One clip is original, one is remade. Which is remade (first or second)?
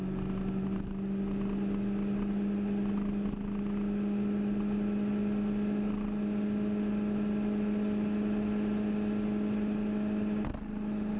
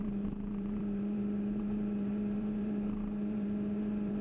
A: second